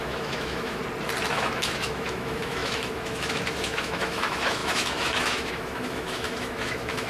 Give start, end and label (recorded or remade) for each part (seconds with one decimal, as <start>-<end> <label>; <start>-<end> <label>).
0.0-0.8 remade; 0.8-1.3 recorded; 1.3-7.1 remade